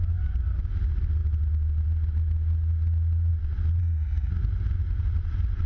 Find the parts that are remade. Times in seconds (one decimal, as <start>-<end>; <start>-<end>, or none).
3.8-4.3